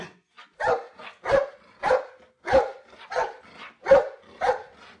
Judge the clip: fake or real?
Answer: real